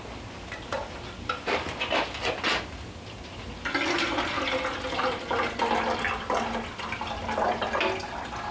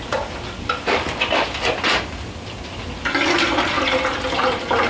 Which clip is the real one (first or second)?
first